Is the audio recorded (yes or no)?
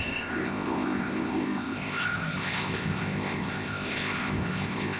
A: no